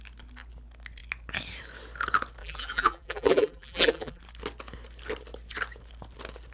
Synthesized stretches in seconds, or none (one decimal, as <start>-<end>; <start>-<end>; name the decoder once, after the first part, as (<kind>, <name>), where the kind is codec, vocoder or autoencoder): 2.4-4.2 (vocoder, BigVGAN v2)